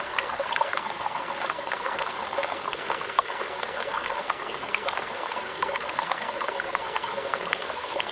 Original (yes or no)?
no